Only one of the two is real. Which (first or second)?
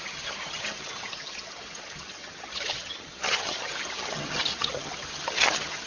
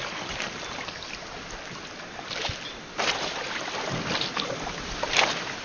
second